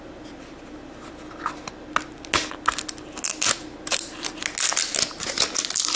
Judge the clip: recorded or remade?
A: recorded